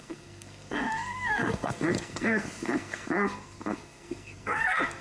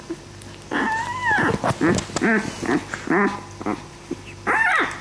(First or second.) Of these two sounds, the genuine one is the second